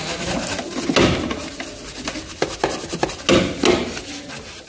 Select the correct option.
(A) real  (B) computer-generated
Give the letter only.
A